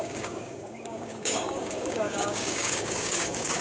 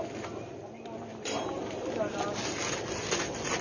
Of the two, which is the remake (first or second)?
first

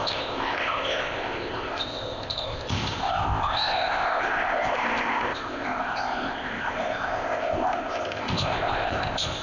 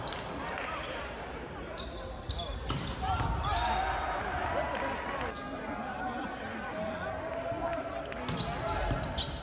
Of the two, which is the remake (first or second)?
first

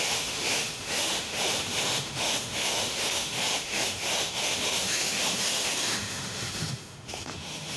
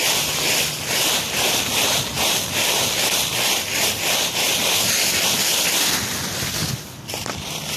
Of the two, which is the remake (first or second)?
first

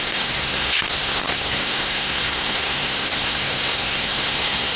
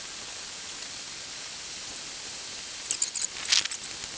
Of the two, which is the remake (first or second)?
first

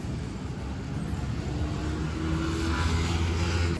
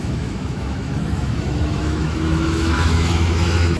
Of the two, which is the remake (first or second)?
second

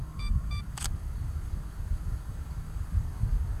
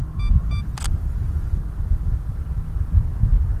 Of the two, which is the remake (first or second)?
first